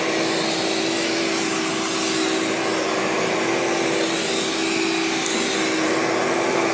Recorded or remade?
recorded